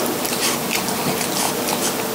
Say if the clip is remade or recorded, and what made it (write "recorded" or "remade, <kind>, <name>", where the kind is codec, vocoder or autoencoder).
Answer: recorded